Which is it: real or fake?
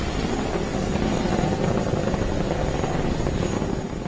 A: real